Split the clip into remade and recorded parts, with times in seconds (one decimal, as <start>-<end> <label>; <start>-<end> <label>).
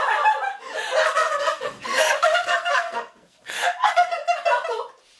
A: 0.0-1.0 recorded; 1.0-4.1 remade; 4.1-5.2 recorded